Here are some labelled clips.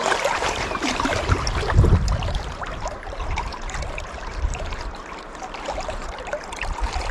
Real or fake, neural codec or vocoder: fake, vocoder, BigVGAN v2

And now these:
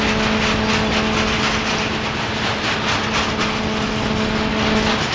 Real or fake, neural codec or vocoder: real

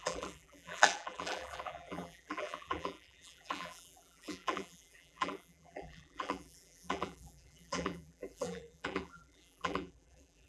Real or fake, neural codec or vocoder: fake, vocoder, BigVGAN v2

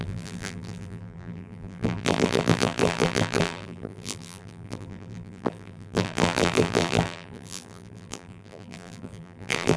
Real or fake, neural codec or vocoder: fake, vocoder, BigVGAN v2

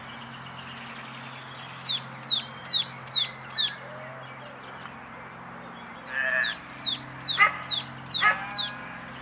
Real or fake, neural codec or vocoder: real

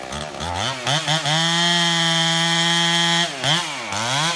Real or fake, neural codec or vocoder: real